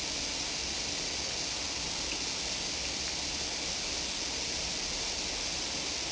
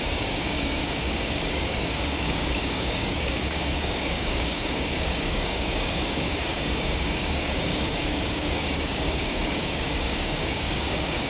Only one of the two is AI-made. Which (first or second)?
second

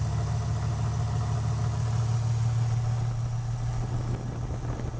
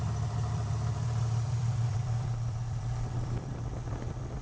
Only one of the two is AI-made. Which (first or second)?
second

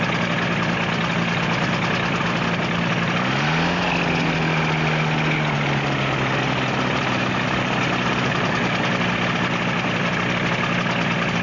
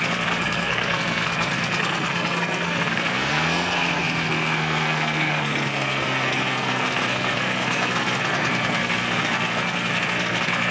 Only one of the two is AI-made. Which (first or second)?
second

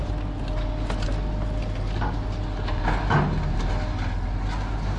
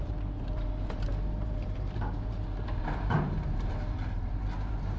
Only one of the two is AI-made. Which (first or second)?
second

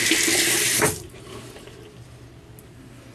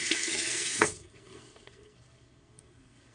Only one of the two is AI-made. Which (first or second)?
second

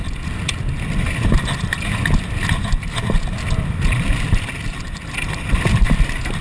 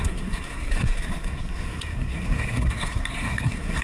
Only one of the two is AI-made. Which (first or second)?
second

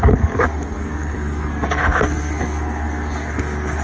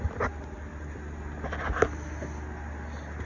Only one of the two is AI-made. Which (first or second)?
first